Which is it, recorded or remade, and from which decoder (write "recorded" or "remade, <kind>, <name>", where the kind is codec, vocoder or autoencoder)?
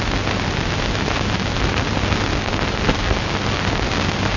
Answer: recorded